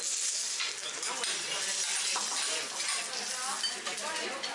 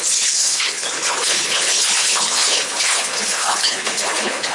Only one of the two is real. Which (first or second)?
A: first